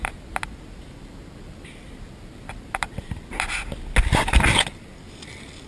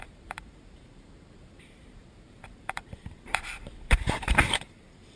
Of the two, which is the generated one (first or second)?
second